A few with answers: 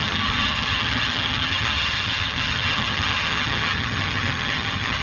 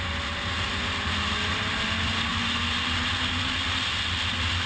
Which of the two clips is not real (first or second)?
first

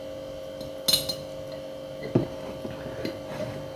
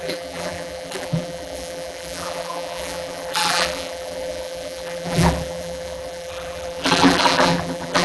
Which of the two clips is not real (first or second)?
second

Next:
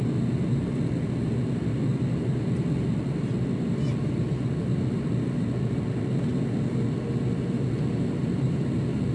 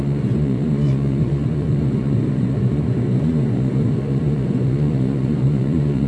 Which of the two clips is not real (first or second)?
second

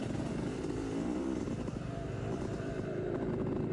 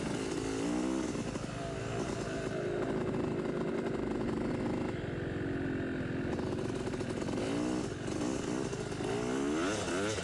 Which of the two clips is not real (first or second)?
first